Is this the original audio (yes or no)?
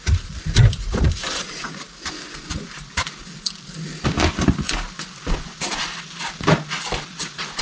no